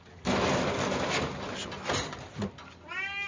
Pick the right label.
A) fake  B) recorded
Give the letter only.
B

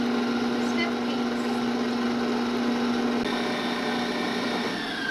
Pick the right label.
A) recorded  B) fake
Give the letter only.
A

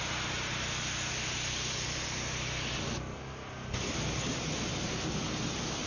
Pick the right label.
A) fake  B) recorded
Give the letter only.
B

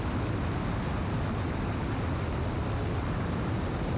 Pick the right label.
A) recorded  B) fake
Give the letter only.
A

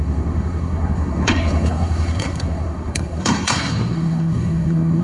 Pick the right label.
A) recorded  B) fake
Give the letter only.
B